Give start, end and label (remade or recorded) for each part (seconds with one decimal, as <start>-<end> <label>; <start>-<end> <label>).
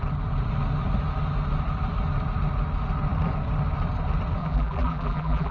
0.0-4.4 recorded; 4.4-5.5 remade